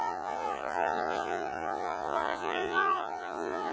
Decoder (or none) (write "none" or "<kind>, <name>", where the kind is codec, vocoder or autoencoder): vocoder, Vocos